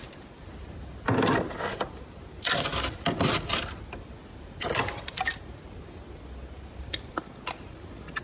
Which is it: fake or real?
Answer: real